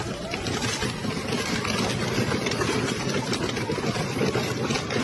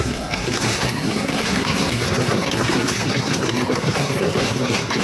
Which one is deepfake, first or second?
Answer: second